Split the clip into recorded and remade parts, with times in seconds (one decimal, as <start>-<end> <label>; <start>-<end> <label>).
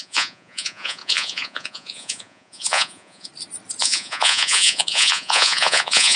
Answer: 0.0-3.3 remade; 3.3-3.8 recorded; 3.8-6.2 remade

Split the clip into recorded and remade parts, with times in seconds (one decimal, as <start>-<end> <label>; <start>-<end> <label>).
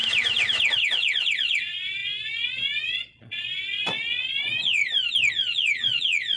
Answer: 0.0-0.8 recorded; 0.8-4.8 remade; 4.8-5.3 recorded; 5.3-6.4 remade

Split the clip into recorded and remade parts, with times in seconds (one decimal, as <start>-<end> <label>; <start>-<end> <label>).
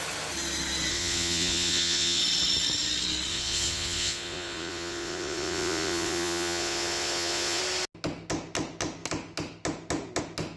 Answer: 0.0-0.9 recorded; 0.9-2.2 remade; 2.2-3.3 recorded; 3.3-7.6 remade; 7.6-10.6 recorded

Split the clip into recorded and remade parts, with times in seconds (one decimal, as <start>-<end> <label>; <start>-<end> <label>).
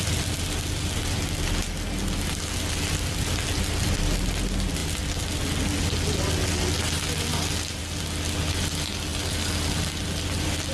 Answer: 0.0-10.7 recorded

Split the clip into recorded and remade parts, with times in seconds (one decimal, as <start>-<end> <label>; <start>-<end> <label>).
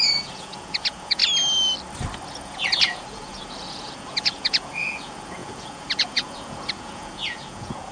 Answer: 0.0-1.2 remade; 1.2-2.4 recorded; 2.4-7.9 remade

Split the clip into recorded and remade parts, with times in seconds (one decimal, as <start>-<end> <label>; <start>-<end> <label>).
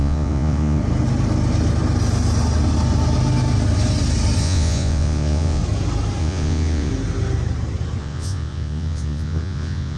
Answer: 0.0-0.8 remade; 0.8-4.4 recorded; 4.4-5.6 remade; 5.6-6.2 recorded; 6.2-6.9 remade; 6.9-8.0 recorded; 8.0-10.0 remade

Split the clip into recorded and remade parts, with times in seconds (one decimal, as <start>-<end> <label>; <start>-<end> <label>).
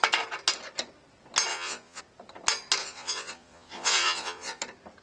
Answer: 0.0-1.5 recorded; 1.5-2.0 remade; 2.0-2.8 recorded; 2.8-4.6 remade; 4.6-5.0 recorded